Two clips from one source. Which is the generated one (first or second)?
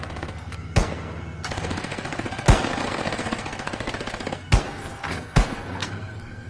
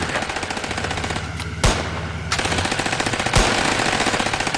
first